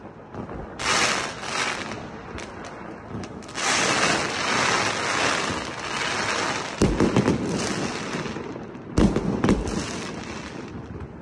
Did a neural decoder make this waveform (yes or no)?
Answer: no